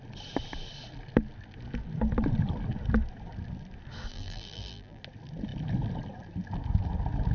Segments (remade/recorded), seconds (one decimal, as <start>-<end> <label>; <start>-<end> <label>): 0.0-4.1 recorded; 4.1-5.0 remade; 5.0-7.3 recorded